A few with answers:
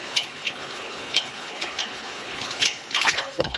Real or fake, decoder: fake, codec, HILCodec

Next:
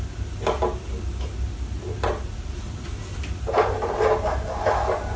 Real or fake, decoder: real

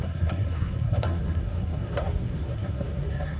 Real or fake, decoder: fake, codec, SNAC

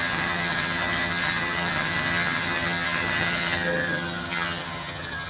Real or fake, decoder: fake, vocoder, HiFi-GAN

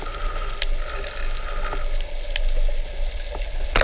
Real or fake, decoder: real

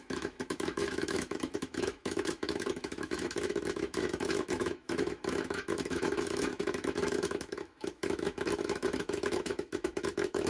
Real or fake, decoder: fake, autoencoder, DAC-VAE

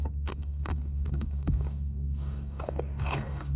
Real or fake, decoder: fake, codec, DAC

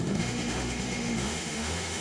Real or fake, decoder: fake, autoencoder, DAC-VAE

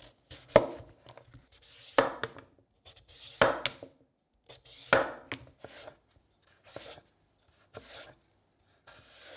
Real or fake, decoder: real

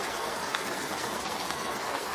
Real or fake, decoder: fake, codec, SNAC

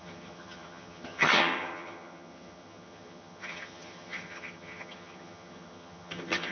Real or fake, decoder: fake, vocoder, HiFi-GAN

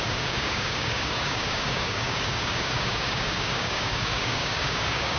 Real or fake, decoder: fake, codec, DAC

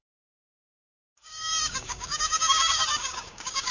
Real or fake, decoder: fake, codec, DAC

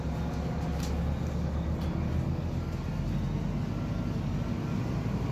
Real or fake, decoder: real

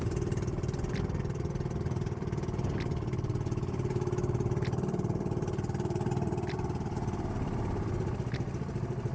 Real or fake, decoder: fake, vocoder, BigVGAN v2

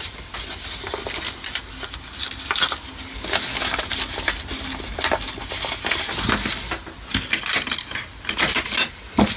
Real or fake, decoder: real